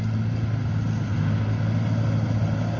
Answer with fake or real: real